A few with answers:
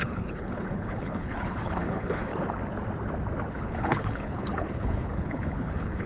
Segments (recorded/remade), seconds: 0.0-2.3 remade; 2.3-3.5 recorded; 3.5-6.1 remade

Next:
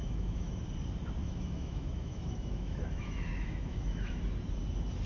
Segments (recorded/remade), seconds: 0.0-0.6 remade; 0.6-1.2 recorded; 1.2-4.2 remade; 4.2-5.1 recorded

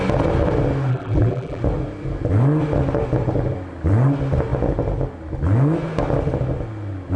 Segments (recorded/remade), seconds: 0.0-0.9 recorded; 0.9-1.6 remade; 1.6-7.2 recorded

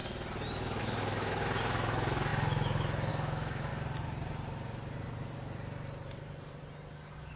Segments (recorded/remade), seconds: 0.0-0.8 recorded; 0.8-3.7 remade; 3.7-7.4 recorded

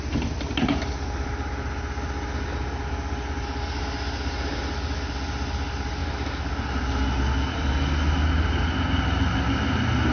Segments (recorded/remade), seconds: 0.0-10.1 recorded